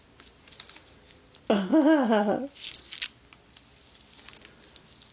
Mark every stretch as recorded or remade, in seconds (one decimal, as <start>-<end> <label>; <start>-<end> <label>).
0.0-5.1 recorded